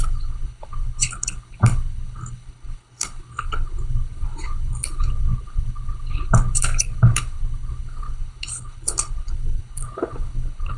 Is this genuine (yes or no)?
no